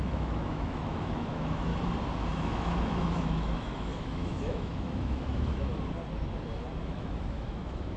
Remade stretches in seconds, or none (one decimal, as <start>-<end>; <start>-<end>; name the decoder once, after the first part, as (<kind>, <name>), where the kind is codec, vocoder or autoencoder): 0.0-1.7 (autoencoder, DAC-VAE); 2.3-5.7; 6.8-8.0